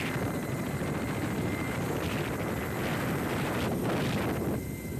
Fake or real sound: real